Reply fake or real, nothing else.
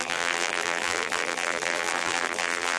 fake